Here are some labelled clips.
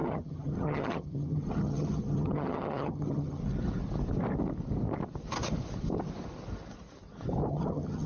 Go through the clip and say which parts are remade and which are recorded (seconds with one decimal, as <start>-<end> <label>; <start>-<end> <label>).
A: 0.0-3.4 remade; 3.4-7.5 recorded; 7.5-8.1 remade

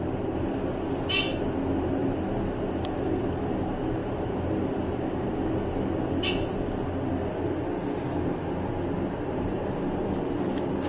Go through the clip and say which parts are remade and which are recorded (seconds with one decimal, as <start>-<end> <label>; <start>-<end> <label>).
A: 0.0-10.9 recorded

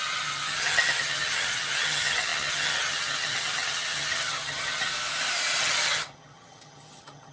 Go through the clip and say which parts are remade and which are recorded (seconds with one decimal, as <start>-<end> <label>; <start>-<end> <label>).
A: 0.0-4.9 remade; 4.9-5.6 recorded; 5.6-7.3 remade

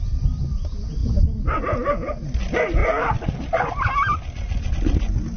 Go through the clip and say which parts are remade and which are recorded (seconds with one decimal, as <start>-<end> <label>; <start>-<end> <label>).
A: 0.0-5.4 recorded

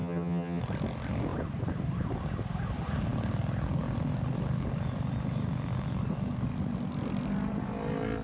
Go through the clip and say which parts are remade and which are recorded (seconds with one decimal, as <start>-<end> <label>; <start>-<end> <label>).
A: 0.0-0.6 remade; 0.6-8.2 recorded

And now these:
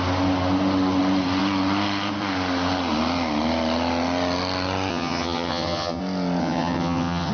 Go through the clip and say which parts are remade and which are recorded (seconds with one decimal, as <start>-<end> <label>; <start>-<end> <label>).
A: 0.0-4.9 recorded; 4.9-6.0 remade; 6.0-6.4 recorded; 6.4-7.3 remade

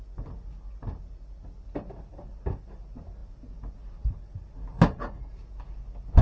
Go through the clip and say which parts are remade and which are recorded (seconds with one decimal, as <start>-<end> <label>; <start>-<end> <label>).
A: 0.0-6.2 recorded